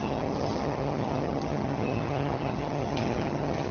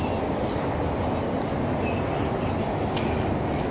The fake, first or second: first